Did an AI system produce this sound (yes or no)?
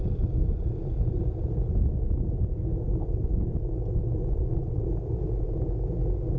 no